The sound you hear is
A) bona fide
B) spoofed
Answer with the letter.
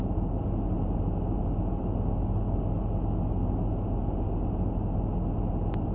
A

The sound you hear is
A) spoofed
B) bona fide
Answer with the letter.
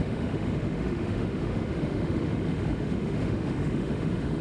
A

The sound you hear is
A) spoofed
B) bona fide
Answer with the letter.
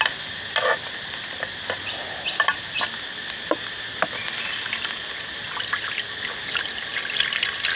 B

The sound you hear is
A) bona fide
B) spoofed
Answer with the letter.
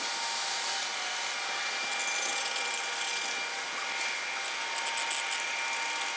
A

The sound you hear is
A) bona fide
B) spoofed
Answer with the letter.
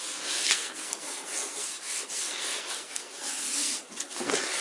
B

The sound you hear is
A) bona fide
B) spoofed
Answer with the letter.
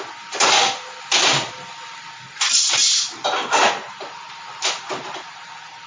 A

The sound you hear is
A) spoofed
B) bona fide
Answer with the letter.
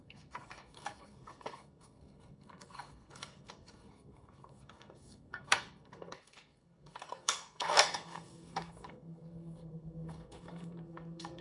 A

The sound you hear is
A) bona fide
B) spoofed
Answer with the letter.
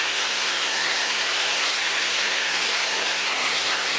B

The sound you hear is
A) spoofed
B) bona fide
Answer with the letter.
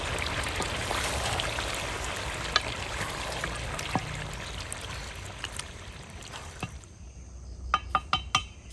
B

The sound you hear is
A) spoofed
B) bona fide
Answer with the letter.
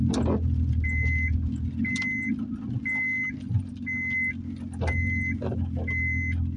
B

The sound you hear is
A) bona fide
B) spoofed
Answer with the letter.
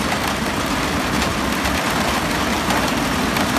A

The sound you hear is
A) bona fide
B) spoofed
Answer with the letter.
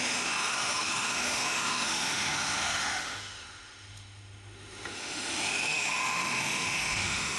B